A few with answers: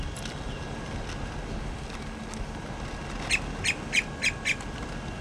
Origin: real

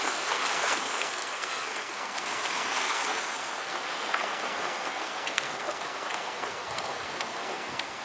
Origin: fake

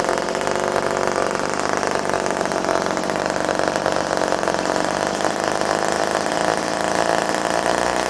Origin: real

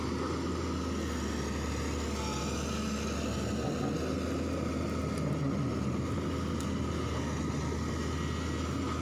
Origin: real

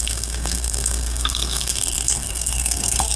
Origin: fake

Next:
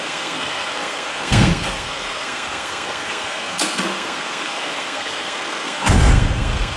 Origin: fake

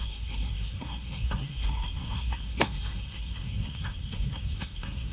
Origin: fake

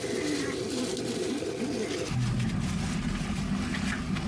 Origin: real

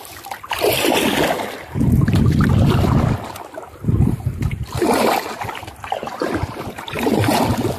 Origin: real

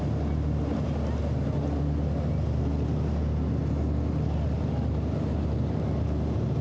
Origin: real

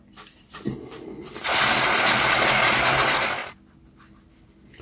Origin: real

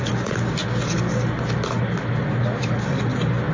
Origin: real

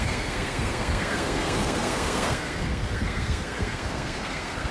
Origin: fake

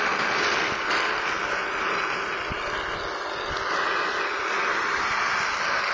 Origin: real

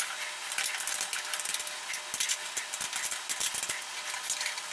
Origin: real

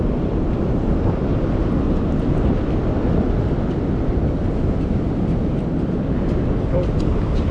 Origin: real